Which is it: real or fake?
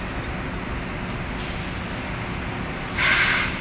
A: real